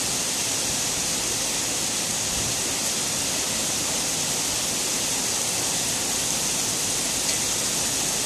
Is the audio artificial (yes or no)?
no